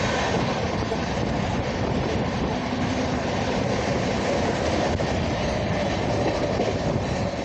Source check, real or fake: real